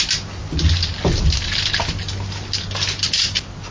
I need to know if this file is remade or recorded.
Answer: recorded